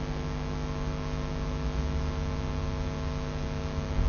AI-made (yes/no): no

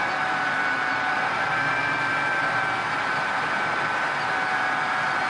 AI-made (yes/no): no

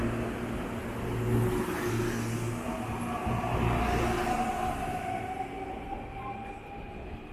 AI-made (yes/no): no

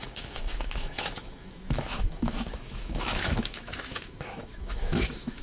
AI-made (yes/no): yes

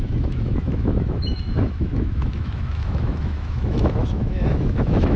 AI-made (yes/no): yes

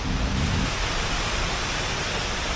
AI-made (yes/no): no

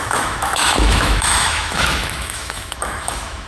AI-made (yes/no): yes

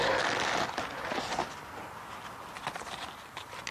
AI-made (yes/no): no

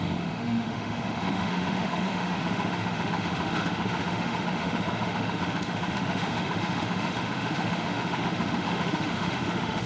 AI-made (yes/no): yes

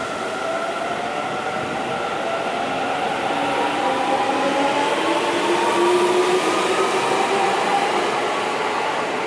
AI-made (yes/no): no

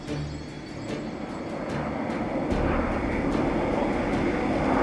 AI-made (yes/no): no